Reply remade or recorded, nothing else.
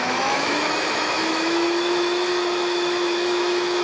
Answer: remade